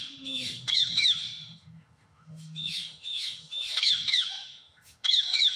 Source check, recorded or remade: remade